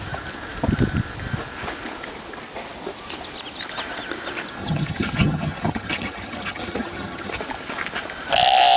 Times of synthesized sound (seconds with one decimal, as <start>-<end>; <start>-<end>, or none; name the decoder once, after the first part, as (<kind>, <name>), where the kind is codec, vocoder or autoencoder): 4.6-7.4 (vocoder, HiFi-GAN)